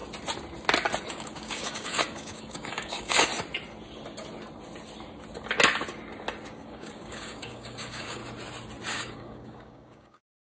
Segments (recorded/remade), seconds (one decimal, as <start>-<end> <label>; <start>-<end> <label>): 0.0-1.1 recorded; 1.1-3.3 remade; 3.3-6.5 recorded; 6.5-8.2 remade; 8.2-8.9 recorded; 8.9-10.6 remade